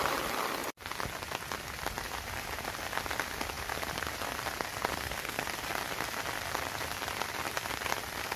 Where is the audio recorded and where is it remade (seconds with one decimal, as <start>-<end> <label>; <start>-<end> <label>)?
0.0-4.9 recorded; 4.9-5.4 remade; 5.4-8.4 recorded